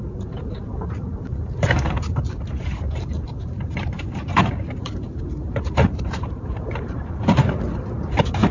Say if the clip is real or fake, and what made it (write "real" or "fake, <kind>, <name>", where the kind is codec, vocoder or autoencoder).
fake, vocoder, BigVGAN v2